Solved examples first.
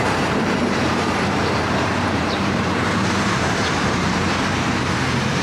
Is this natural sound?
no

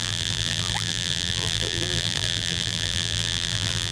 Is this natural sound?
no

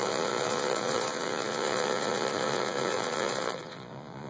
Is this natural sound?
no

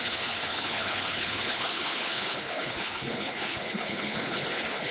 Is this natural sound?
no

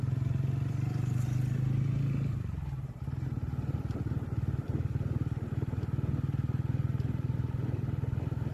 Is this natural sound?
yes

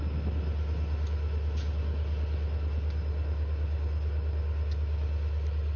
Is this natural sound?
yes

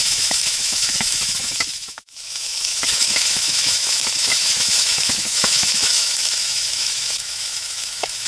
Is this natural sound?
no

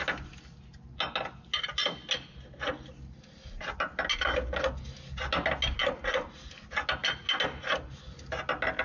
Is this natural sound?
yes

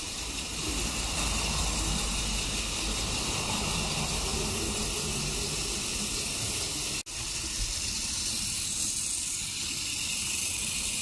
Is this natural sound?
yes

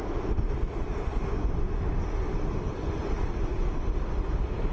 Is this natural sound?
yes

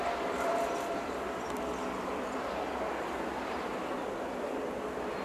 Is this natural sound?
no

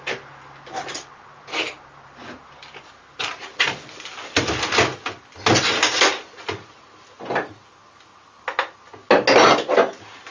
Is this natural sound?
yes